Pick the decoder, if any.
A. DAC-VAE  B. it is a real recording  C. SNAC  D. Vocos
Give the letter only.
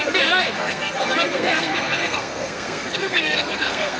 C